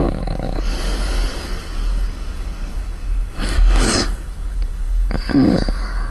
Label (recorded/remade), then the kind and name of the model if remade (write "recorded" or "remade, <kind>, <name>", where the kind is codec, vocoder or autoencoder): remade, codec, DAC